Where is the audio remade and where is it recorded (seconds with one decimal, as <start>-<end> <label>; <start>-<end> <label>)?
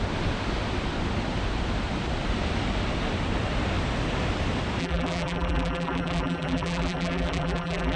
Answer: 0.0-4.8 recorded; 4.8-8.0 remade